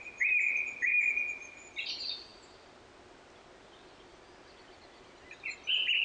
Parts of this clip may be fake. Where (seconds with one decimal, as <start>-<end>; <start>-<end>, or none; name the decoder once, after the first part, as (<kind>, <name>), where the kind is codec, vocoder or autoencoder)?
none